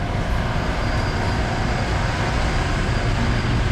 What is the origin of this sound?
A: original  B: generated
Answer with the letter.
A